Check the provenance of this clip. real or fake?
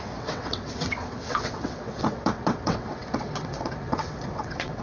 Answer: fake